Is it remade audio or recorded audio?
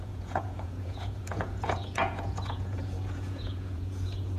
remade